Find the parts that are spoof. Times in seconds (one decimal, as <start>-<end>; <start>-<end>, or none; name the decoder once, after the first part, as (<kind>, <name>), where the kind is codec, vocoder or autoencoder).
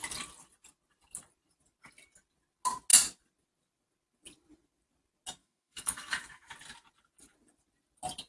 5.4-6.5 (autoencoder, DAC-VAE)